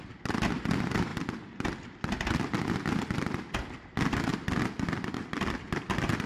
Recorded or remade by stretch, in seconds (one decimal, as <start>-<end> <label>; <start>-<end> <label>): 0.0-6.3 recorded